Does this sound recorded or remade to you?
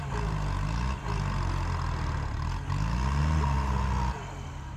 recorded